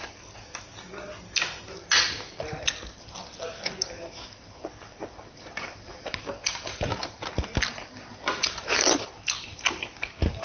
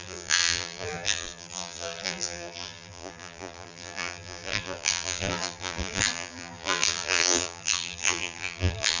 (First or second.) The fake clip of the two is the second